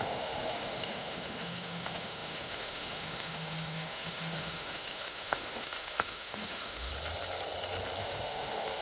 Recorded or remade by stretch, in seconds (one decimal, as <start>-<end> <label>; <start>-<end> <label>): 0.0-6.9 remade; 6.9-8.0 recorded; 8.0-8.8 remade